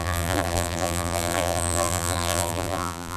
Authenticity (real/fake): fake